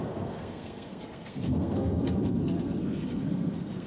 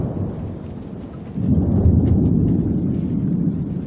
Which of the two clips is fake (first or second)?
first